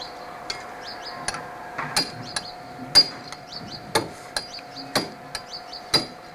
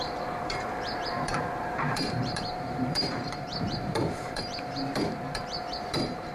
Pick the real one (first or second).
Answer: first